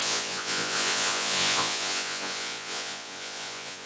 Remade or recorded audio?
remade